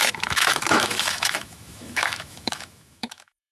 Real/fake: fake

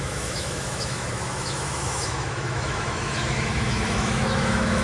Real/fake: fake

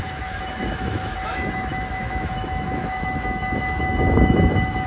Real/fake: fake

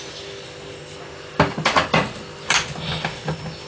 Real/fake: real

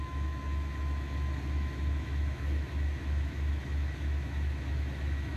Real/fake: fake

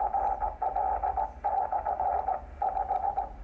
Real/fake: real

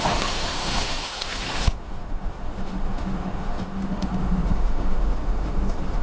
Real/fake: fake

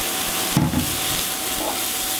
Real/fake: real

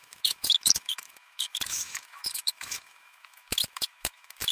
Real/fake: fake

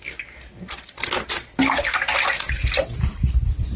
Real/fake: real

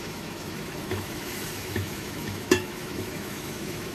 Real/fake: fake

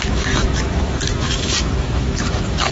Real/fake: fake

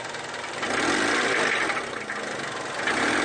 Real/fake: real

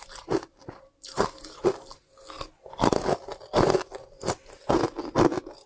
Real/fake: real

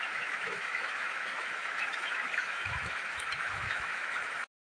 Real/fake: fake